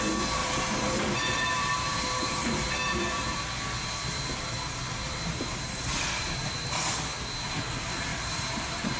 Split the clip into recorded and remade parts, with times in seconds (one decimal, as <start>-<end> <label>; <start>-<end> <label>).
0.0-0.4 recorded; 0.4-3.4 remade; 3.4-5.5 recorded; 5.5-6.5 remade; 6.5-8.1 recorded; 8.1-9.0 remade